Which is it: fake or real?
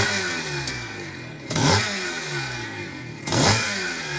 fake